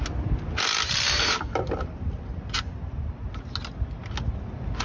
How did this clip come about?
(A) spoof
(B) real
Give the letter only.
B